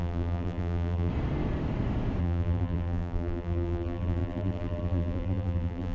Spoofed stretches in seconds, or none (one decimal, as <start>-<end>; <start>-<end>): 0.0-1.1; 2.2-5.9